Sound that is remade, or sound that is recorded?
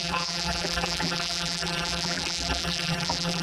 remade